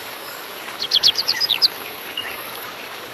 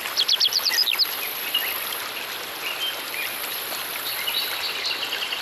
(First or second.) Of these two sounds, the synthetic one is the first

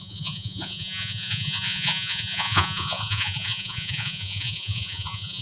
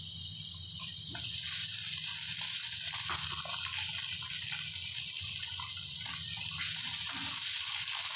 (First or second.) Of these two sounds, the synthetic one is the first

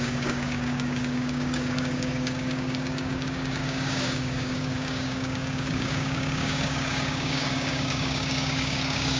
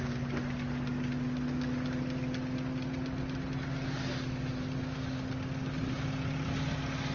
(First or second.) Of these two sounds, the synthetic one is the first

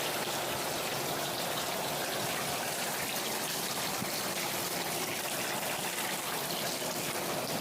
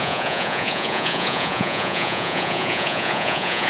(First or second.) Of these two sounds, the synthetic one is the second